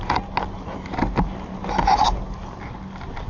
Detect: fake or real real